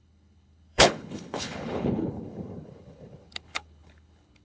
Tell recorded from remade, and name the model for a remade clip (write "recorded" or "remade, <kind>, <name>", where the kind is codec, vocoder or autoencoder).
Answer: remade, codec, HILCodec